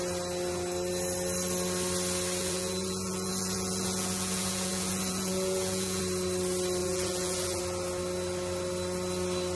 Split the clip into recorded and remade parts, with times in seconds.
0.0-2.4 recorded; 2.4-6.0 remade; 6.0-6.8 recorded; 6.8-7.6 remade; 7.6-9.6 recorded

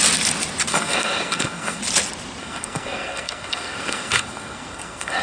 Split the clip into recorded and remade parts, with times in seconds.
0.0-0.7 recorded; 0.7-1.8 remade; 1.8-2.4 recorded; 2.4-5.2 remade

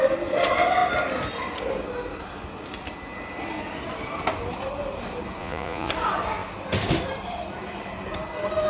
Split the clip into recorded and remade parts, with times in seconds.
0.0-5.4 recorded; 5.4-5.9 remade; 5.9-8.7 recorded

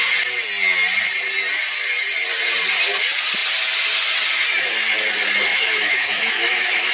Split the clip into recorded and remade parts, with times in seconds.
0.0-5.5 recorded; 5.5-6.9 remade

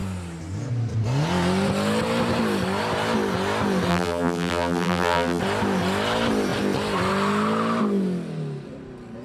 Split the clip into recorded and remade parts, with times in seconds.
0.0-3.9 recorded; 3.9-5.4 remade; 5.4-9.2 recorded

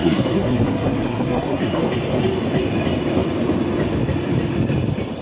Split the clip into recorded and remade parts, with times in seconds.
0.0-1.8 remade; 1.8-5.2 recorded